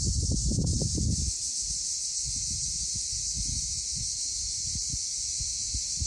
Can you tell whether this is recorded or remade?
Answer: recorded